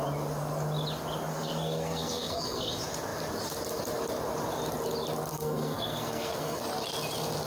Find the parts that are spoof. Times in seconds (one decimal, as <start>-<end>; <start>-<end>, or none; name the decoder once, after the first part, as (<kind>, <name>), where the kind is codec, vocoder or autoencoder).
1.3-2.7 (codec, SNAC); 5.3-6.6